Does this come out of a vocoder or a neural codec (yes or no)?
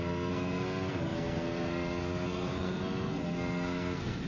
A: yes